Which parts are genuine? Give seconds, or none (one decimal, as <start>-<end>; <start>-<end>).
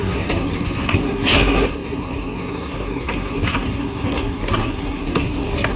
none